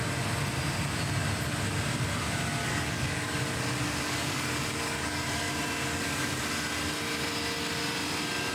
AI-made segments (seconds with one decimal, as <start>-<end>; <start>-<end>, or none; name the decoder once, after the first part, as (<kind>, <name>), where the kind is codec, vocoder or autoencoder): 2.6-5.5 (codec, DAC); 5.9-6.4